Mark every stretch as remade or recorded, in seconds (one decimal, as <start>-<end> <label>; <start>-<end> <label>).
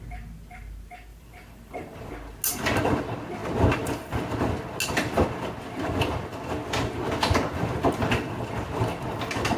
0.0-1.1 recorded; 1.1-2.1 remade; 2.1-9.6 recorded